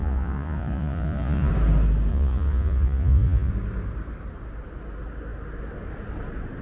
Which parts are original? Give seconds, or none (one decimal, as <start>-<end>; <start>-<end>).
1.5-2.1; 3.5-6.6